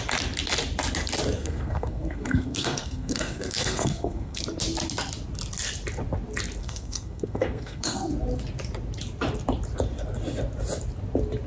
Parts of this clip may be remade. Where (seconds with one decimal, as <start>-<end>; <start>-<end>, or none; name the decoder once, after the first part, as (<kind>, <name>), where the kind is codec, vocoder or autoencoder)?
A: 1.4-4.4 (codec, SNAC); 6.6-8.1